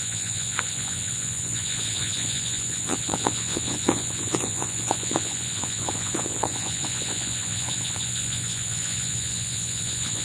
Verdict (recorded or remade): remade